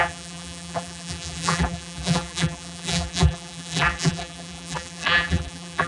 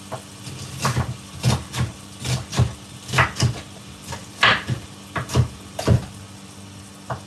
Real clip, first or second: second